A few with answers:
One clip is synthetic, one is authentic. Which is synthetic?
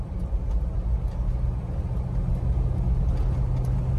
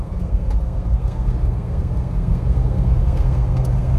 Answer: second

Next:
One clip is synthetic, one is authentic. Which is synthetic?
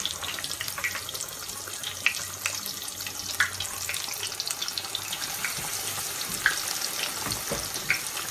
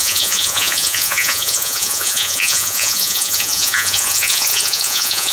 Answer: second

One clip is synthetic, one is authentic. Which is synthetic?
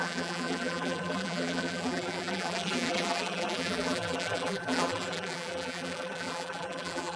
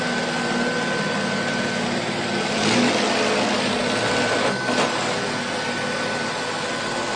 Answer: first